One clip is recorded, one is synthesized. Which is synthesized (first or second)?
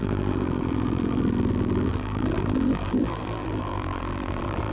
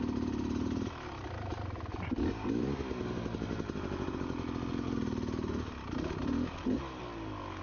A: first